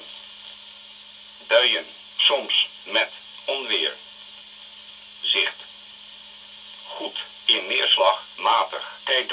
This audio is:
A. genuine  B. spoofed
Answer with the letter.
A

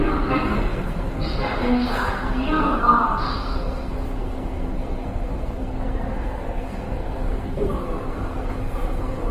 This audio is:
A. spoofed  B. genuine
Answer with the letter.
A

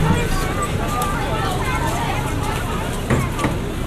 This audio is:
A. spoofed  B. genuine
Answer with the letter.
B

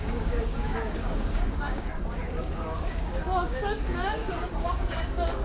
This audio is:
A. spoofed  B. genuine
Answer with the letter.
A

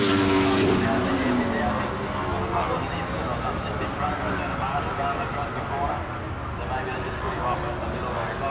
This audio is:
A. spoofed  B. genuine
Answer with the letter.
B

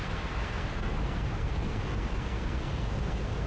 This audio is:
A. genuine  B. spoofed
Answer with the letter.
B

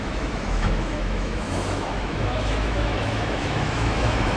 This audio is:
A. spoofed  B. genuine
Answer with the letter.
A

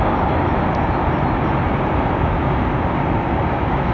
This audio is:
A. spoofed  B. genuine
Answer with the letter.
B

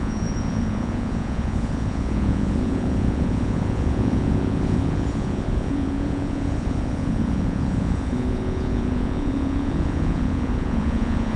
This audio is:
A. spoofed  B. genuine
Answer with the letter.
A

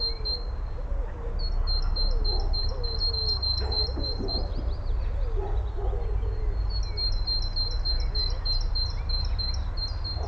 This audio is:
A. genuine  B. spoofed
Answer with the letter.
A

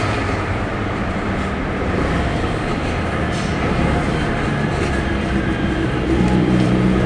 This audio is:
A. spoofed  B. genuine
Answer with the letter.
A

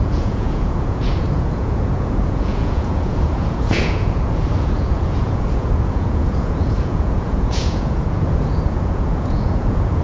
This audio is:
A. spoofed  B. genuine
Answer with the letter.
A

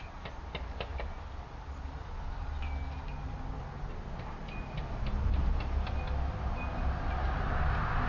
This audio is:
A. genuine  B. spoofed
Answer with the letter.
A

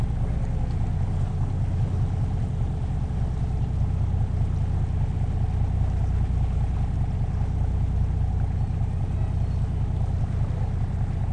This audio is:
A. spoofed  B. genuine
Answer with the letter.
B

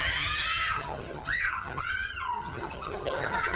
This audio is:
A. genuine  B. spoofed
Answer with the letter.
B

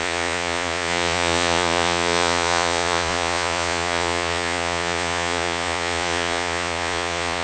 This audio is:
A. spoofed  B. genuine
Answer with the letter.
A